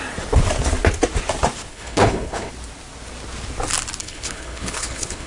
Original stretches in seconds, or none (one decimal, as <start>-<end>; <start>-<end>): 0.0-1.7; 2.5-4.0

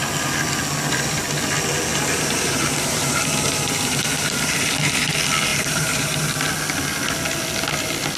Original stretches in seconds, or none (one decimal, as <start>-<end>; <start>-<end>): 0.0-1.9; 5.1-5.5; 6.2-8.2

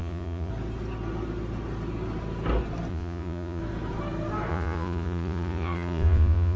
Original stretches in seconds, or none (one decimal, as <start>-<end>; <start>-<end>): 0.5-2.9; 3.6-4.5

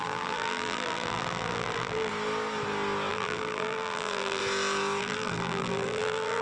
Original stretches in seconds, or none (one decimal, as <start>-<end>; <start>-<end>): 2.1-3.1; 4.4-5.0

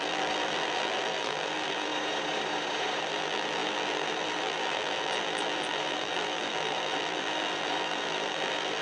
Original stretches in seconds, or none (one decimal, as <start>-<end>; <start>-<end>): 1.9-3.0

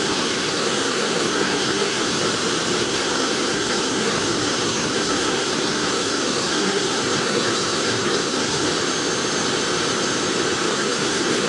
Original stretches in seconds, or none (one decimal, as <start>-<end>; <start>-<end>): 2.2-2.8; 8.7-10.7

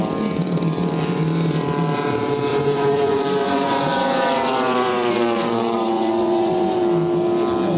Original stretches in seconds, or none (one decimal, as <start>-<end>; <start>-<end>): 0.0-2.5; 6.8-7.8